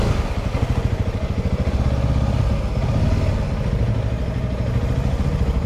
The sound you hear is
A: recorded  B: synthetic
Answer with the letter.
A